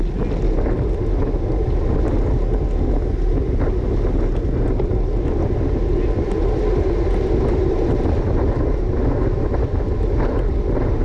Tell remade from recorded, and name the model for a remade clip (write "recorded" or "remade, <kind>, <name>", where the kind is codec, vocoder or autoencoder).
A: recorded